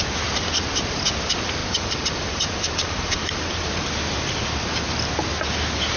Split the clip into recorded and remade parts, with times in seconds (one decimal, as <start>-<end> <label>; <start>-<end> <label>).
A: 0.0-1.6 recorded; 1.6-3.7 remade; 3.7-6.0 recorded